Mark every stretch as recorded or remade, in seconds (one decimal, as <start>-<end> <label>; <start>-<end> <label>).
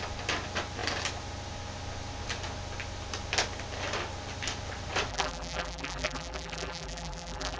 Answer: 0.0-5.1 recorded; 5.1-7.6 remade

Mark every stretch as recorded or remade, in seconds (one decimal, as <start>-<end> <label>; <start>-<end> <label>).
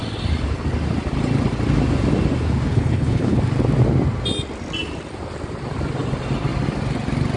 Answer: 0.0-2.7 recorded; 2.7-3.4 remade; 3.4-7.4 recorded